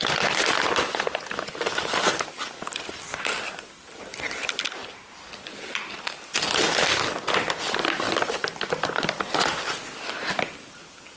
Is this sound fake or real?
real